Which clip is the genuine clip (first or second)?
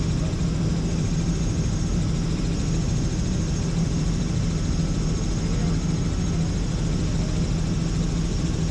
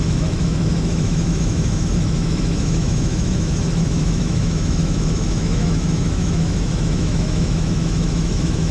first